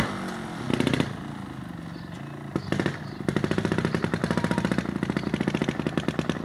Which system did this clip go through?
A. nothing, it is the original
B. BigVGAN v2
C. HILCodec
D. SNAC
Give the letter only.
A